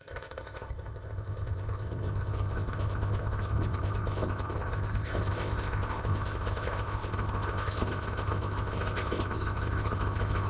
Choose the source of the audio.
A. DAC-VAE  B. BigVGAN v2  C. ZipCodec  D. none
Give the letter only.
C